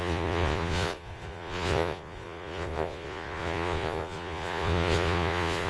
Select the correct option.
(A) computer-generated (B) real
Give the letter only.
A